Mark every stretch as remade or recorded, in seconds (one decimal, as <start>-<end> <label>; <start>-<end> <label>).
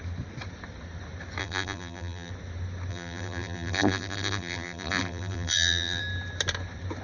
0.0-1.4 recorded; 1.4-2.3 remade; 2.3-2.9 recorded; 2.9-6.0 remade; 6.0-7.0 recorded